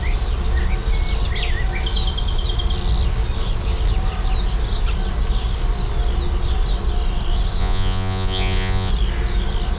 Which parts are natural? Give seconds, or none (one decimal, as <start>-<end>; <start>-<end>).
0.0-7.6; 8.9-9.8